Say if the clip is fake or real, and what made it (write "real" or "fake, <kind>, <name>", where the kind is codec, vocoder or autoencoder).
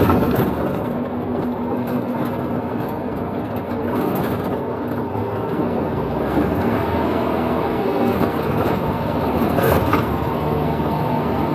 fake, codec, SNAC